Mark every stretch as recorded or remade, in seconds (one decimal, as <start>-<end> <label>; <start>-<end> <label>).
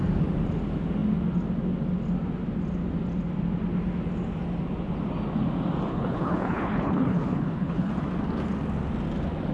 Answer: 0.0-5.9 recorded; 5.9-7.9 remade; 7.9-9.5 recorded